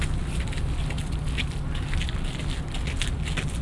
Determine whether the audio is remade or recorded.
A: recorded